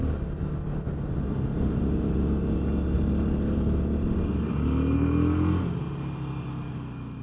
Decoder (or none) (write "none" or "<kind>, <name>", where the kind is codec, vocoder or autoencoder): none